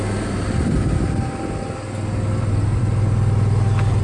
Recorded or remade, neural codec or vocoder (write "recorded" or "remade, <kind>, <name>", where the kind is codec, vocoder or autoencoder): recorded